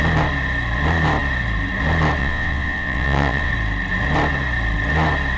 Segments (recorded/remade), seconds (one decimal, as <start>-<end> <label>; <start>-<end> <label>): 0.0-2.2 recorded; 2.2-3.5 remade; 3.5-5.4 recorded